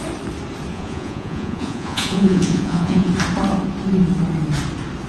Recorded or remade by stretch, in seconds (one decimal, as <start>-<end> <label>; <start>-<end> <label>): 0.0-0.7 recorded; 0.7-3.1 remade; 3.1-5.1 recorded

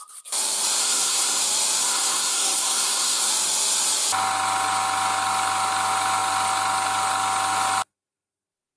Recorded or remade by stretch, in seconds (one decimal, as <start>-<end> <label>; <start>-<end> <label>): 0.0-0.8 recorded; 0.8-1.4 remade; 1.4-1.8 recorded; 1.8-3.3 remade; 3.3-8.8 recorded

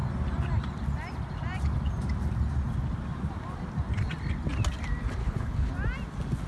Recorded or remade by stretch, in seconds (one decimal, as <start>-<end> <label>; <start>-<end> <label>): 0.0-5.2 recorded; 5.2-5.7 remade; 5.7-6.5 recorded

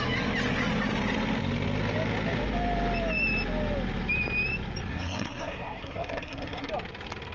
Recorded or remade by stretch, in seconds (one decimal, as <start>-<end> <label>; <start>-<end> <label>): 0.0-4.9 recorded; 4.9-6.7 remade; 6.7-7.3 recorded

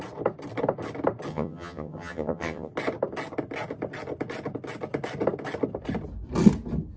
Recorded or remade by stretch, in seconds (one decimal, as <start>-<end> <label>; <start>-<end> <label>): 0.0-1.3 recorded; 1.3-2.7 remade; 2.7-7.0 recorded

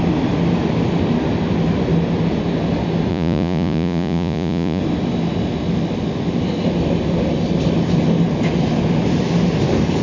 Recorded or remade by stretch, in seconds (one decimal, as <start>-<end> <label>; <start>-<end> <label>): 0.0-3.1 recorded; 3.1-4.8 remade; 4.8-10.0 recorded

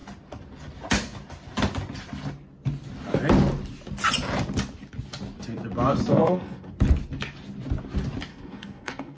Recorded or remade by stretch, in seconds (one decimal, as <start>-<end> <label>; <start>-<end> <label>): 0.0-6.1 recorded; 6.1-6.7 remade; 6.7-8.3 recorded; 8.3-9.2 remade

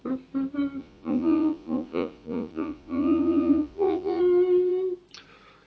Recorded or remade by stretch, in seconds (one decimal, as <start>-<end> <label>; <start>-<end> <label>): 0.0-0.8 recorded; 0.8-4.2 remade; 4.2-5.7 recorded